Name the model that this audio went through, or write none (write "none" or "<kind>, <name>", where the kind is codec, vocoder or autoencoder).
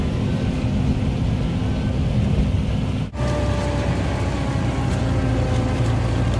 none